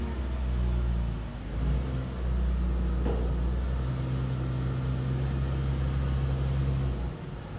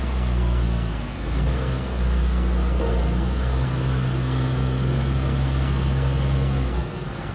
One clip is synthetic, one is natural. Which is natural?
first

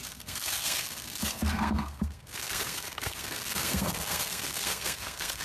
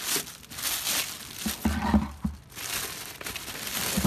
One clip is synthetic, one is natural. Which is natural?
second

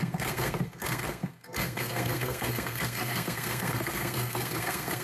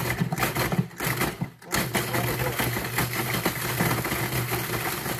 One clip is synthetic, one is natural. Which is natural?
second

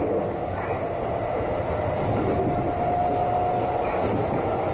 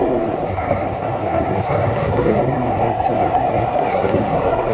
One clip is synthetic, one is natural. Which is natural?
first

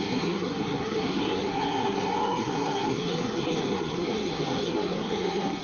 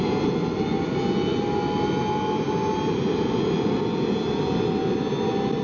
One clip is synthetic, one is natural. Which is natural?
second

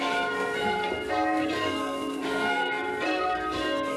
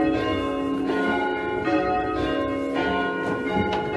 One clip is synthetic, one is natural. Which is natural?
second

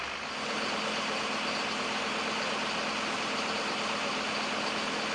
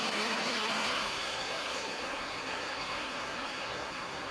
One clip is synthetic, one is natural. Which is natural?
first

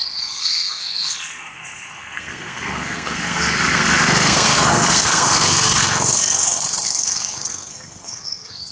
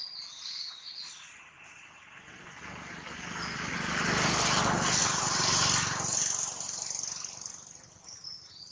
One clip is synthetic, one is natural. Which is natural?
second